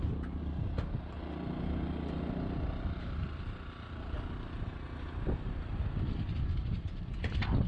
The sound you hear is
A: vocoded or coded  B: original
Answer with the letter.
B